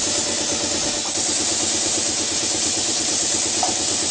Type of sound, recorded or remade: recorded